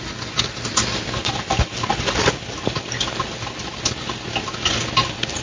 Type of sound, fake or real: real